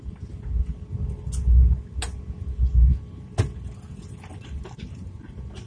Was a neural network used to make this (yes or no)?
no